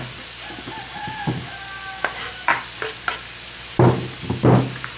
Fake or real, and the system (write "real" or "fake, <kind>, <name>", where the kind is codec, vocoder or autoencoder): real